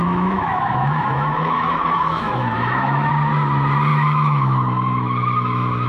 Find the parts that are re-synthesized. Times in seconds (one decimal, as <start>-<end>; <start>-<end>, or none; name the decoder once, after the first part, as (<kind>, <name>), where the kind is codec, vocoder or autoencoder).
0.0-3.1 (autoencoder, DAC-VAE); 3.9-5.9